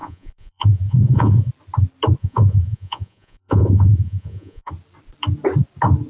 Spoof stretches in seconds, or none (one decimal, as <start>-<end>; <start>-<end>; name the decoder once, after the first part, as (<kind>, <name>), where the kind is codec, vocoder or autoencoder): 0.0-1.5 (vocoder, Vocos); 2.2-4.7